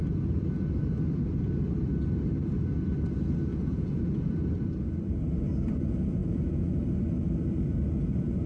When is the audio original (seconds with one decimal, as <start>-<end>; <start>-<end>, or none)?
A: 0.0-3.5; 4.5-6.2; 6.7-8.5